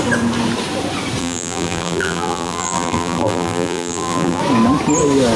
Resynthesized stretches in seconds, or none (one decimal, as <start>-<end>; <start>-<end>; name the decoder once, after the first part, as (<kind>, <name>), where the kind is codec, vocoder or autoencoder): 1.2-4.4 (vocoder, BigVGAN v2)